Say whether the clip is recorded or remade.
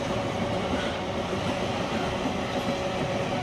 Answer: recorded